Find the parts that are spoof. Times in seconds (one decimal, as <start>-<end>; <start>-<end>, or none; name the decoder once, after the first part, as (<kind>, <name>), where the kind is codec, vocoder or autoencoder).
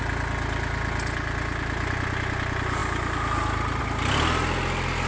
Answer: none